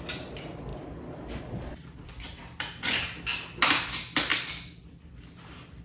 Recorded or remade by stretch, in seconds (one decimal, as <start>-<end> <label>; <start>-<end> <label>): 0.0-5.8 recorded